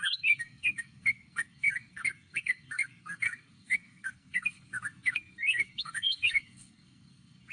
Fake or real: fake